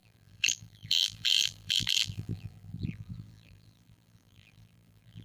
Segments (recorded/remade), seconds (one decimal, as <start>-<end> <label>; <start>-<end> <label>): 0.0-5.2 remade